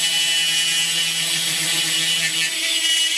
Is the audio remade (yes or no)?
no